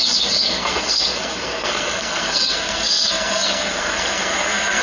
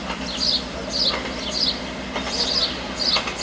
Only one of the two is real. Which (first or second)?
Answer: second